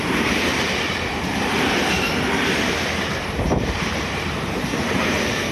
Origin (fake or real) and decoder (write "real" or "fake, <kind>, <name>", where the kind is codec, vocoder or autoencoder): fake, vocoder, BigVGAN v2